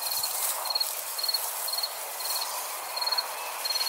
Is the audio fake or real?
real